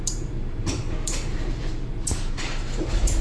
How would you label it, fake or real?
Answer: fake